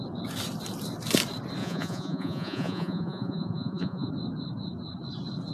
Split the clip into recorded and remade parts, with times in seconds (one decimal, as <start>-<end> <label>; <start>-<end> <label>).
0.0-1.6 recorded; 1.6-4.1 remade; 4.1-5.5 recorded